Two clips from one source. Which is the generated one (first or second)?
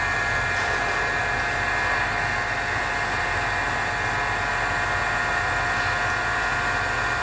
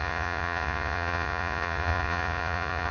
second